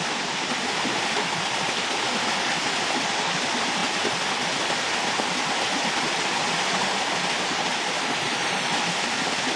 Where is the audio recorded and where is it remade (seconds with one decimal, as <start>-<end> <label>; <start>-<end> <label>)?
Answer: 0.0-9.6 recorded